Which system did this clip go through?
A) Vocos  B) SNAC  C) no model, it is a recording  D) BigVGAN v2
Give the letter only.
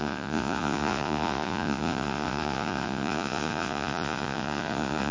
A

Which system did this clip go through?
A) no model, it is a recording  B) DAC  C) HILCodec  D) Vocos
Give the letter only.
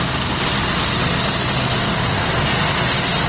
A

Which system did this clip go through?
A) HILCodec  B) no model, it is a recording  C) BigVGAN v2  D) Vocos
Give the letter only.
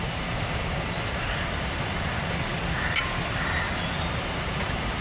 B